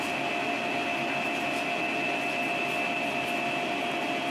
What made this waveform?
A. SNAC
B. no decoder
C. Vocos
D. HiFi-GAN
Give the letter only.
B